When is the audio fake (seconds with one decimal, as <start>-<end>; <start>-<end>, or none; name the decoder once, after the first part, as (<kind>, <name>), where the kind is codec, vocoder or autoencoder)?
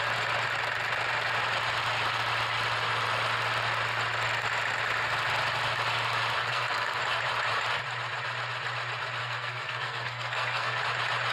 6.4-7.0 (codec, SNAC); 9.2-10.8